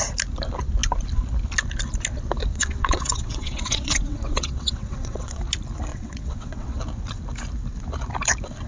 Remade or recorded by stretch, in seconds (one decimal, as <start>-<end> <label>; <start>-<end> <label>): 0.0-2.5 recorded; 2.5-5.4 remade; 5.4-5.9 recorded; 5.9-6.8 remade; 6.8-8.7 recorded